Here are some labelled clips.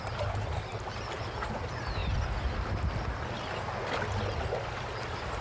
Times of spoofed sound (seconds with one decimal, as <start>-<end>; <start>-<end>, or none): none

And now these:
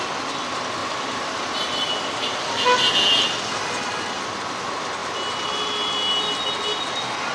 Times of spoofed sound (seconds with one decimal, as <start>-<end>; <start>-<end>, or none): none

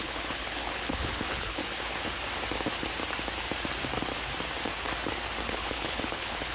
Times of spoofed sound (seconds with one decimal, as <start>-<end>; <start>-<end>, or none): 0.0-1.6; 5.5-6.5

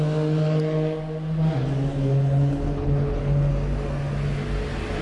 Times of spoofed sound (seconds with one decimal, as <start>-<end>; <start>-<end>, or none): 1.9-3.5